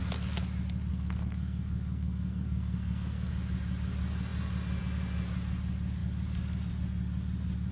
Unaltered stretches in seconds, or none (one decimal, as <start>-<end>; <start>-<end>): 0.0-0.9; 3.3-7.7